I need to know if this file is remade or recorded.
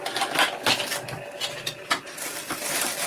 remade